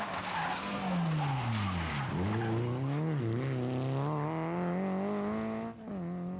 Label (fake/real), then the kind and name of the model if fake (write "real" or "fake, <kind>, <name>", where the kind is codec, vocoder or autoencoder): real